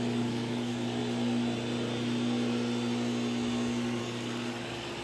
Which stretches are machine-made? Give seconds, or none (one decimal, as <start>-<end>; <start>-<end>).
0.0-1.0; 4.0-5.0